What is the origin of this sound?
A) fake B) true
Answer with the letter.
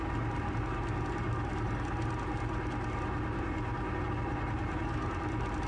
B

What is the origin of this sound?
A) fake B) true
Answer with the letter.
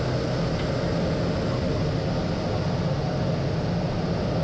B